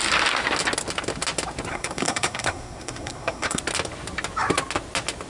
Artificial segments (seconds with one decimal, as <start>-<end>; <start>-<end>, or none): 1.7-3.6